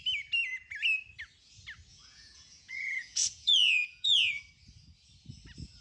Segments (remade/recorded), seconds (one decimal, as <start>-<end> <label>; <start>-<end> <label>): 0.0-1.9 recorded; 1.9-4.4 remade; 4.4-5.8 recorded

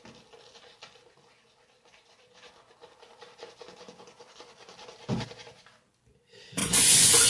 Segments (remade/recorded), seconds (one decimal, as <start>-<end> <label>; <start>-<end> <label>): 0.0-6.6 recorded; 6.6-7.3 remade

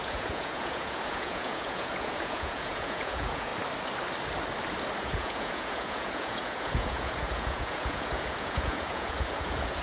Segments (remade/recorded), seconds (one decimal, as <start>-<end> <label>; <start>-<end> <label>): 0.0-3.5 remade; 3.5-5.0 recorded; 5.0-9.8 remade

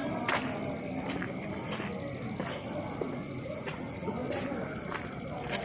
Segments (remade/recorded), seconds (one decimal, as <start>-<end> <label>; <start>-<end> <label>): 0.0-3.4 recorded; 3.4-4.2 remade; 4.2-5.6 recorded

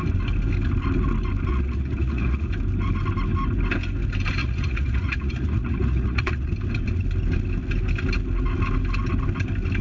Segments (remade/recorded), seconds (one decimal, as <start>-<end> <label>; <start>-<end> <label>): 0.0-1.5 recorded; 1.5-2.5 remade; 2.5-4.4 recorded; 4.4-6.5 remade; 6.5-9.8 recorded